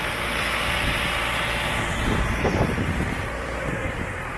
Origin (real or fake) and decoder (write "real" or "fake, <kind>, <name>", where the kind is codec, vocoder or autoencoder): real